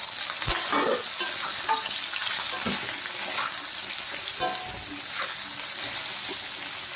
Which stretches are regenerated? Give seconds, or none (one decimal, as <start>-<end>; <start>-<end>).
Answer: none